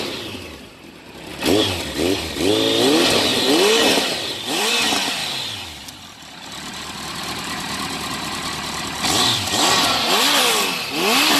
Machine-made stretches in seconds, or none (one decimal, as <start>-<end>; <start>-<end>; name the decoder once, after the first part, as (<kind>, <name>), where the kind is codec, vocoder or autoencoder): 1.3-2.5 (vocoder, BigVGAN v2); 3.3-4.7; 5.2-10.4